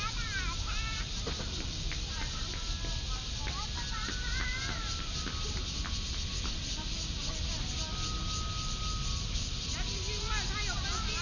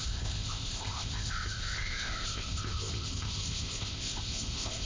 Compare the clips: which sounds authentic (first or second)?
first